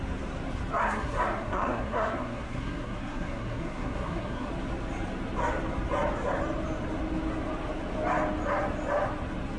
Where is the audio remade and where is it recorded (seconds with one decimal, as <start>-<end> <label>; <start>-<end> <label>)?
0.0-0.8 recorded; 0.8-4.5 remade; 4.5-9.6 recorded